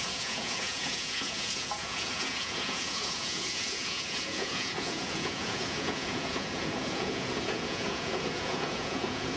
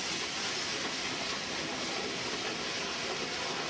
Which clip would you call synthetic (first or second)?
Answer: first